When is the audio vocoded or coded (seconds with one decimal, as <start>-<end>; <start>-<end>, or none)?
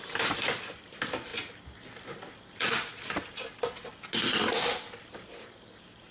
none